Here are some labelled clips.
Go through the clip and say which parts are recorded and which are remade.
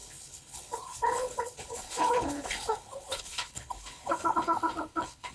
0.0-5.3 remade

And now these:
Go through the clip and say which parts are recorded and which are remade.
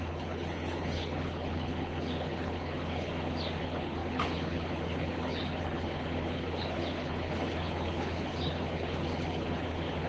0.0-3.1 remade; 3.1-3.6 recorded; 3.6-10.1 remade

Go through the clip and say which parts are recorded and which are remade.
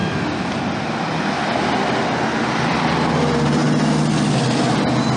0.0-5.2 recorded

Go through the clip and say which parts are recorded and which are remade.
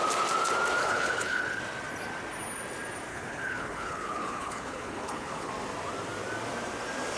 0.0-0.8 recorded; 0.8-1.6 remade; 1.6-3.1 recorded; 3.1-5.5 remade; 5.5-7.2 recorded